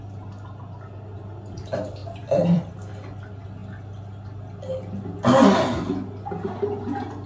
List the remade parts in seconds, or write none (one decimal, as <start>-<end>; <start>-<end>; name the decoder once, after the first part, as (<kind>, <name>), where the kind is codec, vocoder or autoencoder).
2.0-2.7 (vocoder, BigVGAN v2)